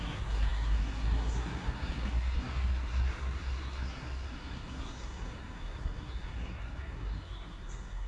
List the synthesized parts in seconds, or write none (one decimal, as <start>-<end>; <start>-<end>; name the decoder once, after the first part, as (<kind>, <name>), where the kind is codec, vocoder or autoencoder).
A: 0.0-8.1 (codec, SNAC)